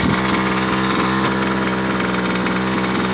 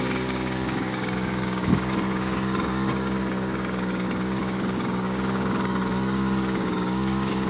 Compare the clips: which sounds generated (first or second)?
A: second